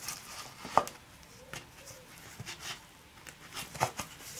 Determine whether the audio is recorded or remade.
recorded